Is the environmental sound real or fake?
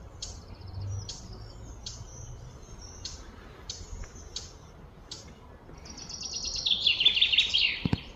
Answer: real